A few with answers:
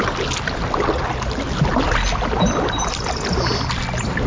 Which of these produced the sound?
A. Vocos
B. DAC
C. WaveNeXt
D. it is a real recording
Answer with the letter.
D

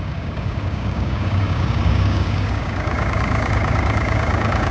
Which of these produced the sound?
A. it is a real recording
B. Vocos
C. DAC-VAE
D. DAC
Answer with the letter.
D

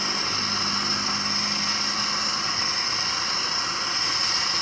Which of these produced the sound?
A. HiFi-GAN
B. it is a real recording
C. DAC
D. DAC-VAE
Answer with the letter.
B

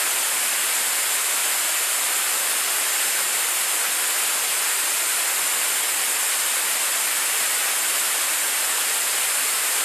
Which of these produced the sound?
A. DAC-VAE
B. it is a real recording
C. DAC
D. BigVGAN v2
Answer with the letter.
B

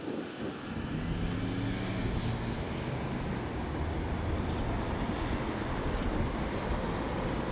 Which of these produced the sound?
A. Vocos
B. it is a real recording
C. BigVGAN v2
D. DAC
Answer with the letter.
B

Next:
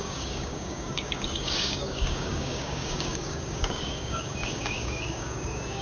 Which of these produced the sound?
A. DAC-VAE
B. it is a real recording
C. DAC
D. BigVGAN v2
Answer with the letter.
C